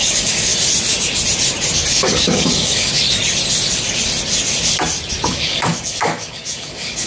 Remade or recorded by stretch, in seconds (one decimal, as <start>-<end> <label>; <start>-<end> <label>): 0.0-0.5 remade; 0.5-1.9 recorded; 1.9-2.9 remade; 2.9-5.3 recorded; 5.3-7.1 remade